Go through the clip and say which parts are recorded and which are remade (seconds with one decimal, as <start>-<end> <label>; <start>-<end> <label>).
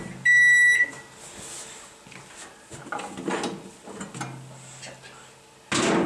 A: 0.0-6.1 recorded